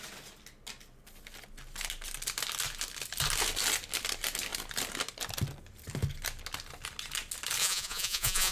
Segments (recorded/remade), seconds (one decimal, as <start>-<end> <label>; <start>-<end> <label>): 0.0-7.6 recorded; 7.6-8.5 remade